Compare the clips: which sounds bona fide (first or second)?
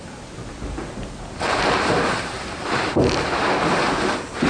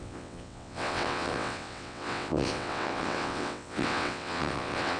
first